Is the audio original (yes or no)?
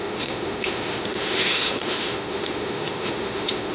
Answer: no